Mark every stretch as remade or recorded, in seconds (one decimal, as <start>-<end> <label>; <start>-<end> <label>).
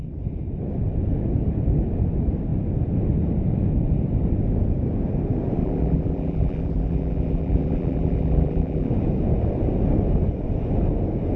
0.0-5.6 recorded; 5.6-8.9 remade; 8.9-11.4 recorded